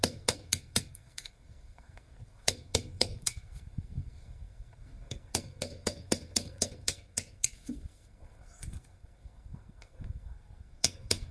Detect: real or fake fake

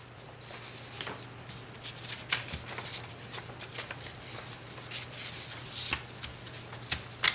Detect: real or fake real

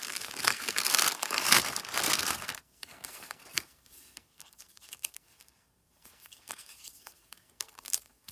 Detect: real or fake fake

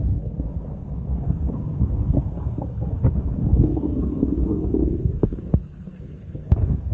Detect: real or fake fake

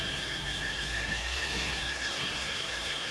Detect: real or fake fake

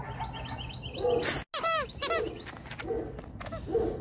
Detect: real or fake real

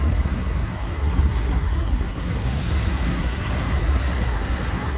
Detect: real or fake fake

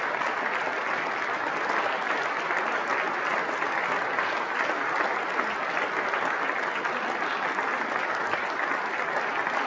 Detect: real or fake real